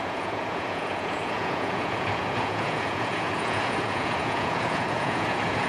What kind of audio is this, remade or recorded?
remade